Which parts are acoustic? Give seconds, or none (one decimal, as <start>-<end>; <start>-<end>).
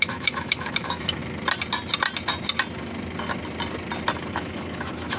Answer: 1.2-4.3